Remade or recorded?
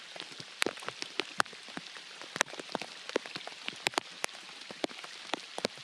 recorded